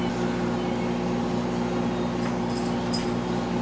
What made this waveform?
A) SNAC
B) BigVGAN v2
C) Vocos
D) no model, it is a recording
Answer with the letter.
D